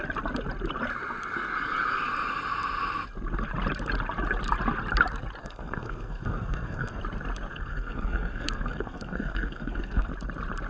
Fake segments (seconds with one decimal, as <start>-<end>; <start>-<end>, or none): 5.4-7.0; 7.5-10.1